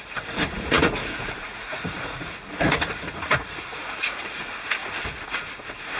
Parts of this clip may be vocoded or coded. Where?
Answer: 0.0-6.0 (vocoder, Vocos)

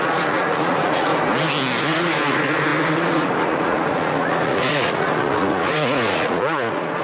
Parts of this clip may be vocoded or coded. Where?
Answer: 0.0-1.1 (vocoder, Vocos); 1.8-7.0

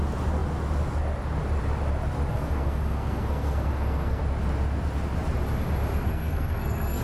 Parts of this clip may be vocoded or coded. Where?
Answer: 2.3-4.2 (codec, SNAC); 5.9-7.0

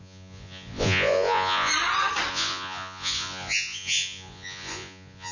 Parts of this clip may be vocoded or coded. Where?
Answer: 0.0-1.7 (vocoder, Vocos); 2.3-5.3

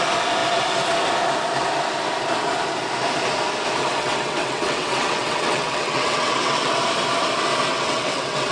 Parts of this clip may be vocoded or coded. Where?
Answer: 3.9-6.7 (vocoder, WaveNeXt); 7.7-8.5

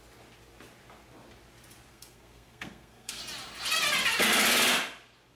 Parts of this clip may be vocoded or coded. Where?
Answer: 1.9-3.2 (codec, SNAC)

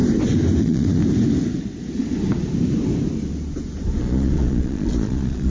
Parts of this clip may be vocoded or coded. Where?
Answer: 0.6-1.0 (vocoder, Vocos); 4.0-5.5